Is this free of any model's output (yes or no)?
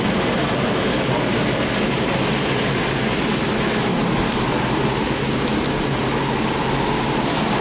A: yes